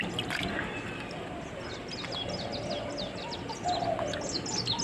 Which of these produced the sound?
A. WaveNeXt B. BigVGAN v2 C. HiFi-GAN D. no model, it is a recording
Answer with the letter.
D